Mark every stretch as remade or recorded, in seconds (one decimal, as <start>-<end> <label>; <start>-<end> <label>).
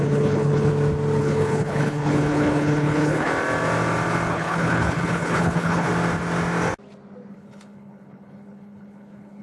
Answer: 0.0-0.7 remade; 0.7-1.2 recorded; 1.2-3.3 remade; 3.3-4.3 recorded; 4.3-5.9 remade; 5.9-7.3 recorded; 7.3-9.4 remade